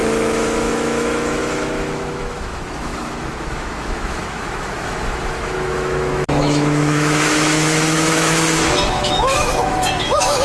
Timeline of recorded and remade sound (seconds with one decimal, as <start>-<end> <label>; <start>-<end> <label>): 0.0-10.4 remade